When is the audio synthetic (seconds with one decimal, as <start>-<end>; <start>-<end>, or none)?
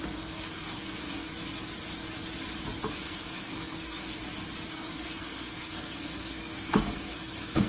0.0-1.3; 2.8-4.2; 4.7-7.7